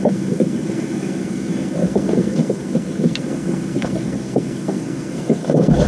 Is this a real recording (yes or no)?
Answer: no